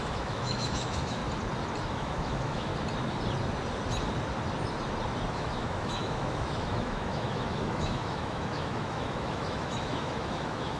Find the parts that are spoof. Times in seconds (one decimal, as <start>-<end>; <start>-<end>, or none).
0.0-1.2; 1.9-2.7; 5.3-10.8